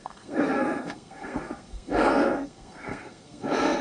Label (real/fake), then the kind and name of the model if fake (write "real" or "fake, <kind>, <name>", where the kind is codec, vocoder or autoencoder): fake, codec, SNAC